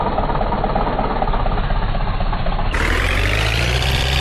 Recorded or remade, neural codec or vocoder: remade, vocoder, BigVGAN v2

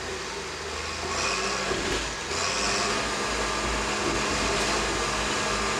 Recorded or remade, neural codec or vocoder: recorded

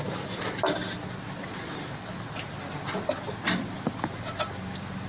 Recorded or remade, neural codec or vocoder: recorded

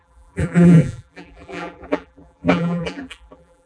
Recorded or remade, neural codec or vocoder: remade, vocoder, BigVGAN v2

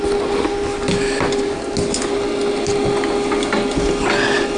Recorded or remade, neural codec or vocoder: recorded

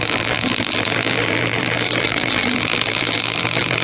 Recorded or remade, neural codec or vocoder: remade, vocoder, BigVGAN v2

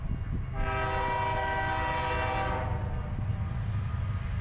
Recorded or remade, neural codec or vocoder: recorded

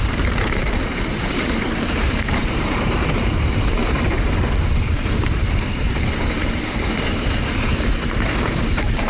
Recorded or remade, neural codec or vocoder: remade, vocoder, BigVGAN v2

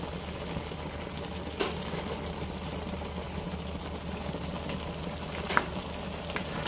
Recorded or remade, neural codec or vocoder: recorded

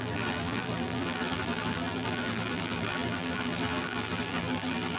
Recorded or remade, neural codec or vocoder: remade, vocoder, BigVGAN v2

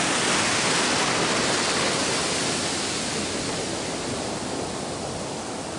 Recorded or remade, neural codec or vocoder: recorded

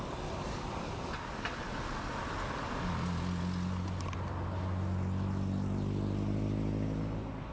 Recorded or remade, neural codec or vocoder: recorded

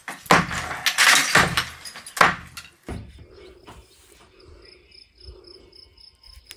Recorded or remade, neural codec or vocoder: recorded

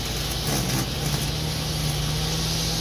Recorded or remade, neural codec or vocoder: recorded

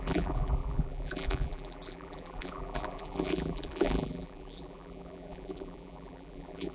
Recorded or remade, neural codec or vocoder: remade, vocoder, BigVGAN v2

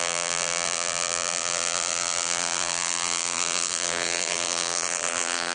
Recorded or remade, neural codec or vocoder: remade, vocoder, BigVGAN v2